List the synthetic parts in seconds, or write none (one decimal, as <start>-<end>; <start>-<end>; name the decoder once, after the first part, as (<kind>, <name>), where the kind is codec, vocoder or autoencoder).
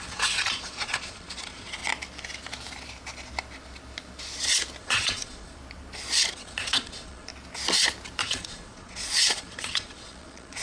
0.0-1.8 (vocoder, Vocos); 4.8-5.6; 6.3-7.3; 8.2-10.6